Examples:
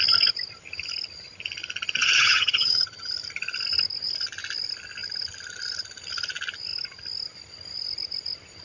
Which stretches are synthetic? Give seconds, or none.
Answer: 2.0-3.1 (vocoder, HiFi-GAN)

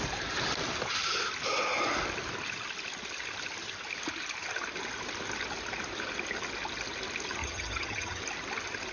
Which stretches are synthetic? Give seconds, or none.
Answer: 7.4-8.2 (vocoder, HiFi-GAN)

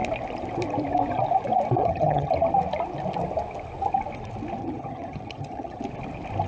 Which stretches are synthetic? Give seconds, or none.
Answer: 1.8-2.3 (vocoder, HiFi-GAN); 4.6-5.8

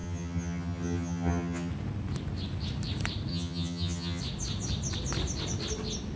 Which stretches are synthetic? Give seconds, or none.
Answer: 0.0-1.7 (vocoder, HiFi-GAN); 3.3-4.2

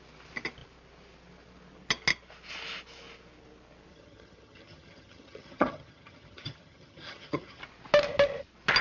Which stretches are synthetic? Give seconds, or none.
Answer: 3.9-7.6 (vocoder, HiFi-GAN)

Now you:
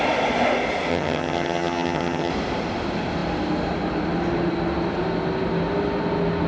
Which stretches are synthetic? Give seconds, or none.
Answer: 0.9-2.3 (vocoder, HiFi-GAN)